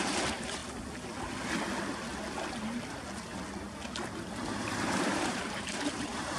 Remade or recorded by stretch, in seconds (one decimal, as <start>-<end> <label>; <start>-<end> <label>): 0.0-0.6 remade; 0.6-4.4 recorded; 4.4-6.4 remade